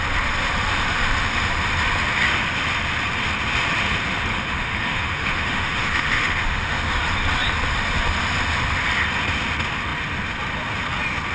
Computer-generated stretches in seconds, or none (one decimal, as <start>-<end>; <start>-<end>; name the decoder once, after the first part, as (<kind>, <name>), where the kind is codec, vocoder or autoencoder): 4.3-6.8 (autoencoder, DAC-VAE)